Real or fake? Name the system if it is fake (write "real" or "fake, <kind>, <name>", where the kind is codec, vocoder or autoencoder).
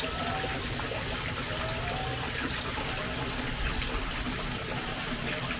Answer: real